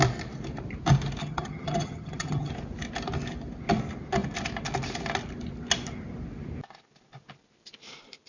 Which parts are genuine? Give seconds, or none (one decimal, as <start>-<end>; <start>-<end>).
0.0-1.2; 2.5-8.3